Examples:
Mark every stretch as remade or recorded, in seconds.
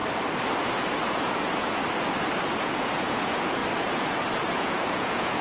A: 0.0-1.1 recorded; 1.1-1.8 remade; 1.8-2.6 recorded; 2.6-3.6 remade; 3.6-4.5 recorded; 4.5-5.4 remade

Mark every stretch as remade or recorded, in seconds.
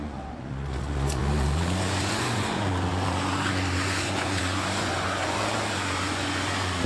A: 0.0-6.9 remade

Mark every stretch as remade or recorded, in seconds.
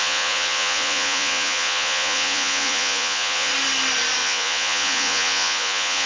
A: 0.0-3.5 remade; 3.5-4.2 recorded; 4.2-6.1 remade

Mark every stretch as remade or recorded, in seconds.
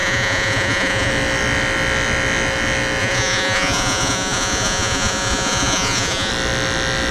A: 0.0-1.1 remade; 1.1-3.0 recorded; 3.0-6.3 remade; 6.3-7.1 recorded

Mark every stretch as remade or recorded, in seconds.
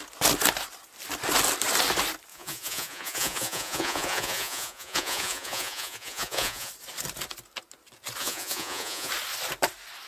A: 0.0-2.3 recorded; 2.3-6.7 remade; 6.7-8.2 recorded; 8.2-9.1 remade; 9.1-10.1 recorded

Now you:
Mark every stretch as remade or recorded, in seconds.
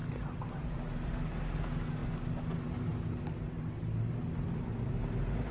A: 0.0-5.5 recorded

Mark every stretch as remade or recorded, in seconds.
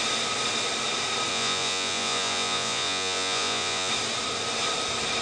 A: 0.0-1.3 recorded; 1.3-3.9 remade; 3.9-5.2 recorded